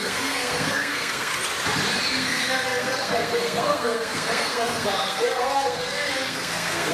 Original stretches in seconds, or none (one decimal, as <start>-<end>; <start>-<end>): 1.3-2.1